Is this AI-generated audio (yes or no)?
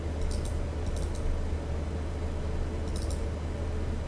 no